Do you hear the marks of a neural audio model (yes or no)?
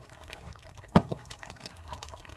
yes